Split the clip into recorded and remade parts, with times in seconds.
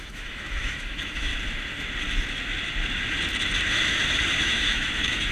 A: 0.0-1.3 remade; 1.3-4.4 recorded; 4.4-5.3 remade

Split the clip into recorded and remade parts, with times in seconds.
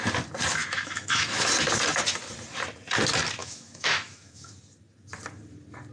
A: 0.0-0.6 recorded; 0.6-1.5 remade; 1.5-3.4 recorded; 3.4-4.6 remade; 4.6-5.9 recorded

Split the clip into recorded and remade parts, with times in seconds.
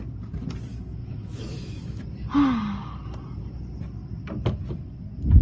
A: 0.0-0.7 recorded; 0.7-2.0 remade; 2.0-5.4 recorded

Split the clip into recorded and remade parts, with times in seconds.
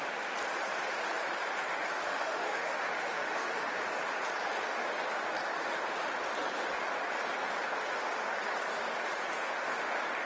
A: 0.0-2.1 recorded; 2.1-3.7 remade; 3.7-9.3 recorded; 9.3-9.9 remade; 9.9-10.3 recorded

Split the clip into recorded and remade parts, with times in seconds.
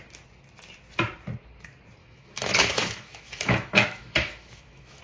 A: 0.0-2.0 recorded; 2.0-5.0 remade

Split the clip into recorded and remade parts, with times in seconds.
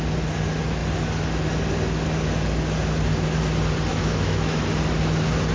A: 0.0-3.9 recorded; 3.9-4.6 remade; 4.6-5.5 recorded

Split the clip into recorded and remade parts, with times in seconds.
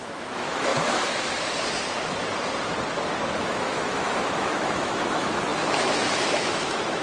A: 0.0-0.7 remade; 0.7-3.4 recorded; 3.4-7.0 remade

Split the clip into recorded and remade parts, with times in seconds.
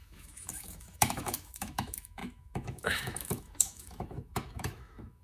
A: 0.0-5.2 remade